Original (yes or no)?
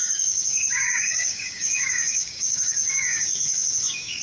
no